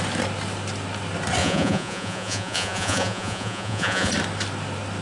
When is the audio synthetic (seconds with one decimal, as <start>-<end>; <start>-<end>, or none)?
1.4-4.1